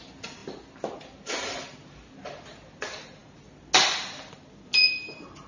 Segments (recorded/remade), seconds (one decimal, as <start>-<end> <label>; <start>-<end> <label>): 0.0-5.5 recorded